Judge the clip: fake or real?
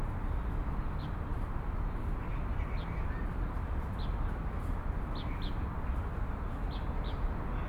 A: real